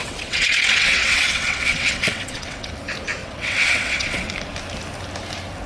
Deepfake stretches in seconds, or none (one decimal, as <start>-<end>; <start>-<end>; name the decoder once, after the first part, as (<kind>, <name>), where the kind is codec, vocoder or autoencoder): 0.0-2.7 (vocoder, WaveNeXt); 3.2-4.3

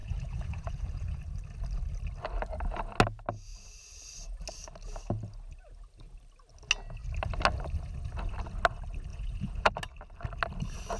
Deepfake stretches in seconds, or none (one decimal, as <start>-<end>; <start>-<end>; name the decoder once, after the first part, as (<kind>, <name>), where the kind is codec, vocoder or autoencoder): 0.0-1.2 (vocoder, Vocos); 9.1-9.7

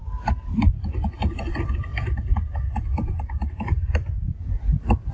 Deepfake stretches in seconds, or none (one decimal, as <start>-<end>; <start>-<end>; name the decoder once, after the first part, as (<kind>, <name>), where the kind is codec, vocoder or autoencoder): 0.8-5.1 (vocoder, BigVGAN v2)

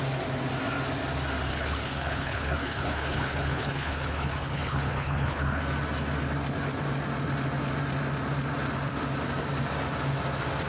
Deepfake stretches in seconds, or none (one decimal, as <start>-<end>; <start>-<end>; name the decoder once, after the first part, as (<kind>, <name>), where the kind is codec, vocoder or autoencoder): 1.5-5.6 (codec, HILCodec)

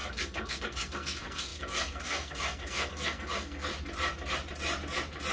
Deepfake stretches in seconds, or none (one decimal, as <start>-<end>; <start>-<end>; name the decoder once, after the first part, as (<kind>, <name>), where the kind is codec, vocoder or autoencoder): 0.0-3.7 (codec, SNAC)

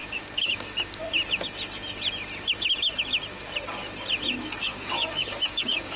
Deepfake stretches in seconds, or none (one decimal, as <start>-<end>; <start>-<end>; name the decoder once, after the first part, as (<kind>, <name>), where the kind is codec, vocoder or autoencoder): 0.0-1.0 (codec, DAC); 4.6-6.0

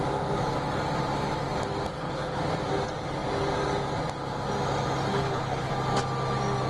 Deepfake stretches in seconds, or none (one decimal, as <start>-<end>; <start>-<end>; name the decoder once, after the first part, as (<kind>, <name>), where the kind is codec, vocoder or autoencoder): 1.9-2.4 (codec, HILCodec); 5.1-5.7

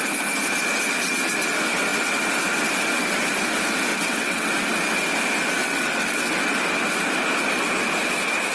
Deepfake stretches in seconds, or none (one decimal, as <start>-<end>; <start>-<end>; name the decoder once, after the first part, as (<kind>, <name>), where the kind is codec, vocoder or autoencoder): 3.9-4.5 (vocoder, WaveNeXt); 5.6-6.3